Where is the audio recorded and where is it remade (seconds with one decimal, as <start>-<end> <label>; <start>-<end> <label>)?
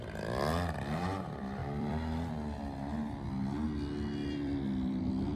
0.0-1.6 recorded; 1.6-2.3 remade; 2.3-4.2 recorded; 4.2-5.0 remade; 5.0-5.4 recorded